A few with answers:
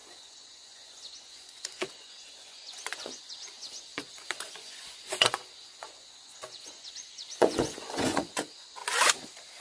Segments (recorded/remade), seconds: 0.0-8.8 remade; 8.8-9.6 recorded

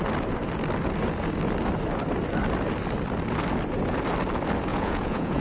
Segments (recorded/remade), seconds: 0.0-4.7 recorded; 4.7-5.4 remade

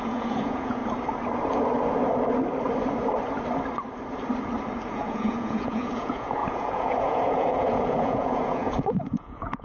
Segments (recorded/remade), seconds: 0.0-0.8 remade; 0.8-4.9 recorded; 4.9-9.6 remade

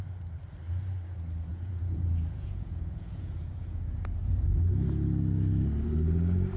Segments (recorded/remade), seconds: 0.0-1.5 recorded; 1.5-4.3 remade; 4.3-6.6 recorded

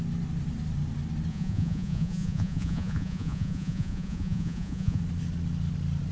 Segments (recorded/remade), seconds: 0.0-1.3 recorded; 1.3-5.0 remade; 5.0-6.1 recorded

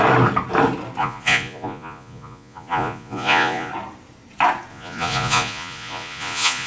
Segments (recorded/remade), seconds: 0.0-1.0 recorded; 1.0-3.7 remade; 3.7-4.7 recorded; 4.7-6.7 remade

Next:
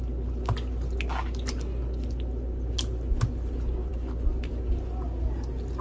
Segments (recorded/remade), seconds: 0.0-5.8 recorded